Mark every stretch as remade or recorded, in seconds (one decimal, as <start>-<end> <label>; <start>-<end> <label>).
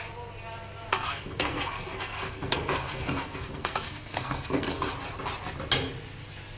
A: 0.0-0.9 recorded; 0.9-4.9 remade; 4.9-6.6 recorded